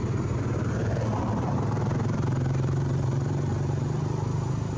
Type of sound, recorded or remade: remade